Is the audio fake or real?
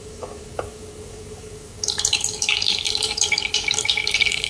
fake